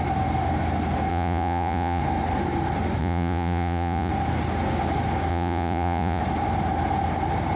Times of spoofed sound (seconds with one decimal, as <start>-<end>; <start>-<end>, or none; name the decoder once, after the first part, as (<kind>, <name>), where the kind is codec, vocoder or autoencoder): 1.1-2.0 (vocoder, Vocos); 3.0-4.1; 5.3-6.2